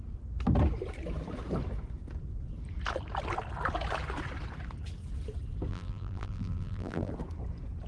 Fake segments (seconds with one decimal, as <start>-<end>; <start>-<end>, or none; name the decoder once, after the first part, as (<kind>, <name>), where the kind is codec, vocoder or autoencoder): 5.7-7.1 (vocoder, BigVGAN v2)